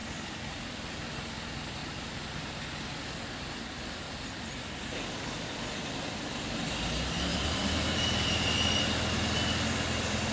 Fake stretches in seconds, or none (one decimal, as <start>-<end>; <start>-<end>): 7.3-8.8